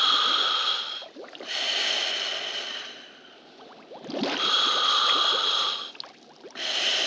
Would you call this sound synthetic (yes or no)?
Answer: no